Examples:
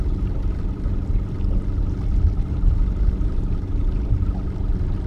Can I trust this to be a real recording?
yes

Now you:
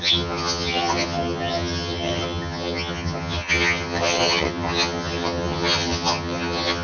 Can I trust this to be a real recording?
no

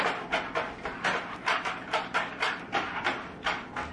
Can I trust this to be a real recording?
yes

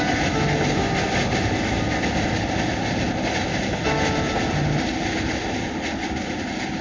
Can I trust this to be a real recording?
yes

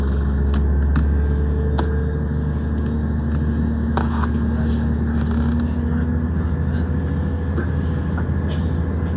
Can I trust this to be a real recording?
yes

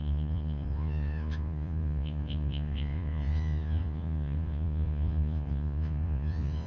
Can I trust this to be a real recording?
no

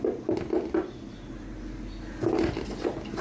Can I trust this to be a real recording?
yes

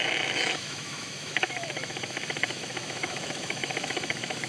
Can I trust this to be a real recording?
no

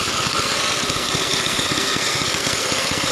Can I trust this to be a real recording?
no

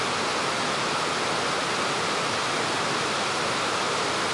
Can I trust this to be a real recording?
yes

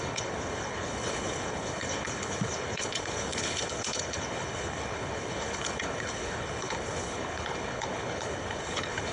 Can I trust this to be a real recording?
no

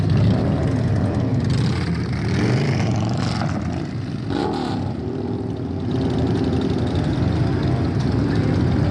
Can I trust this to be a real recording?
no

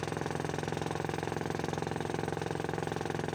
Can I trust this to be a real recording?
yes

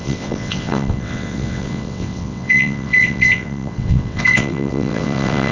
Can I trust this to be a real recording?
no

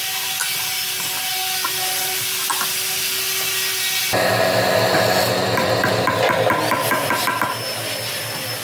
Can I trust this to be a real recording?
yes